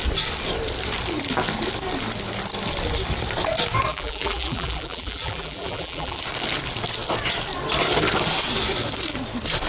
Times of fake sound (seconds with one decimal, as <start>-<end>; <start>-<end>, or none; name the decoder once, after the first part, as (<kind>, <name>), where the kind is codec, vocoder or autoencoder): 3.9-6.2 (vocoder, BigVGAN v2)